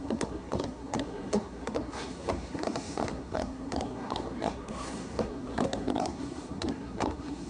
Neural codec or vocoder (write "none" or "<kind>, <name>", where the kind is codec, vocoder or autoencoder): codec, SNAC